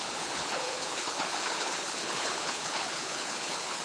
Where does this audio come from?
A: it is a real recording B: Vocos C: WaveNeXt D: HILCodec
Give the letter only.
D